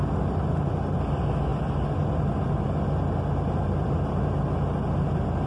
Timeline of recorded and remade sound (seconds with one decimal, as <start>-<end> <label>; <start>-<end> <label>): 0.0-5.5 recorded